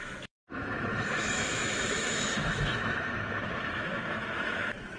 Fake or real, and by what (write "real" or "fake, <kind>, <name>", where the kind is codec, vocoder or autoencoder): fake, autoencoder, DAC-VAE